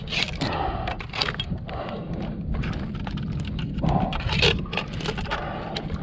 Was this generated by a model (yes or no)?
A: no